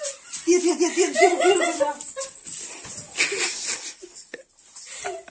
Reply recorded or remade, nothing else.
recorded